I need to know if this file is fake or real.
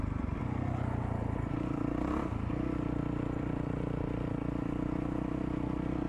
real